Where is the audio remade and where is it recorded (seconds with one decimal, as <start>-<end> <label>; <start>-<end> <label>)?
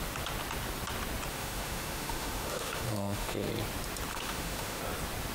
0.0-1.3 recorded; 1.3-3.5 remade; 3.5-4.1 recorded; 4.1-4.8 remade; 4.8-5.3 recorded